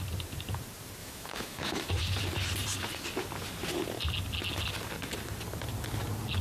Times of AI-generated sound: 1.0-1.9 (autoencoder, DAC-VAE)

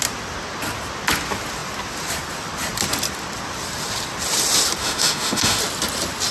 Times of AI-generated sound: 4.8-5.6 (autoencoder, DAC-VAE)

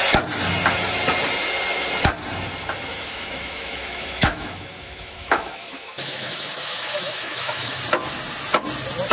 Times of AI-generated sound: 2.9-7.8 (autoencoder, DAC-VAE)

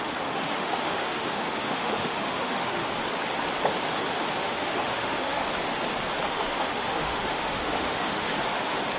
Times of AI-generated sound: 0.0-2.8 (autoencoder, DAC-VAE); 4.4-5.4; 6.3-8.3

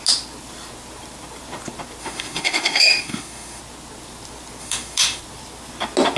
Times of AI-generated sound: 2.0-3.6 (autoencoder, DAC-VAE); 4.6-5.2

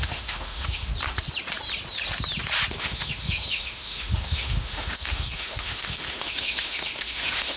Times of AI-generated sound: 0.0-0.9 (autoencoder, DAC-VAE); 2.8-7.6

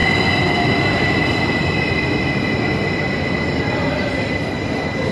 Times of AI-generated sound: none